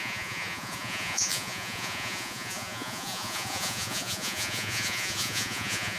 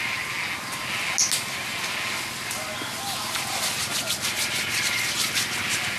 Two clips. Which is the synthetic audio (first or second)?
first